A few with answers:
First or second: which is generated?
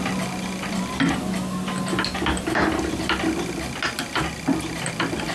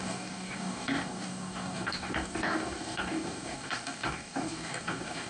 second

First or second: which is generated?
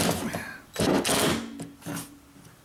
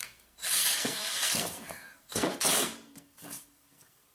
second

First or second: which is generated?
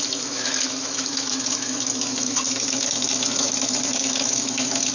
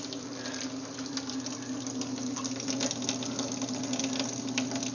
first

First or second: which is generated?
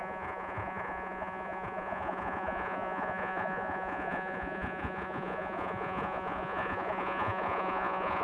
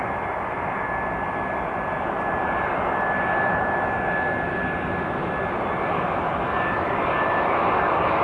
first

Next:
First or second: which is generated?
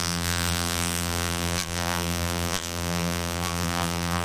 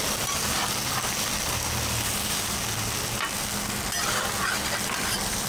first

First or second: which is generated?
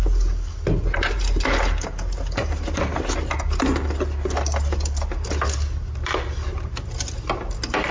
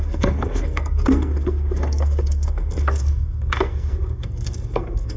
second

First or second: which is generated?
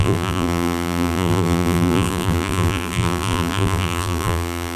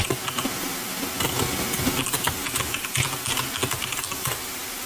first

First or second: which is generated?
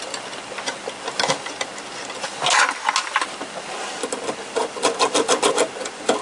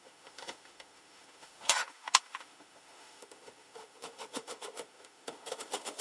second